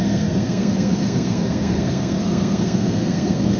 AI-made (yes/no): yes